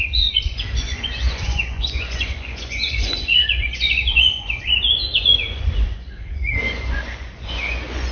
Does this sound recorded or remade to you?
remade